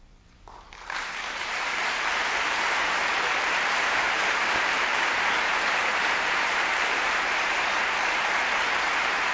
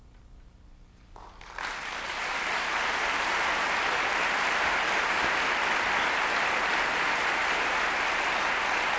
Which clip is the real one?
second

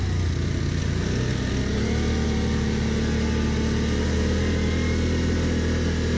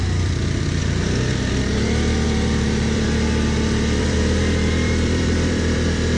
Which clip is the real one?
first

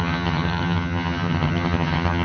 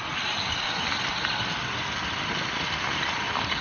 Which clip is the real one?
second